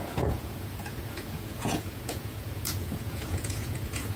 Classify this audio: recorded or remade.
remade